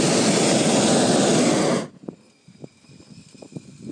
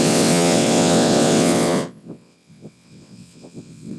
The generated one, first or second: second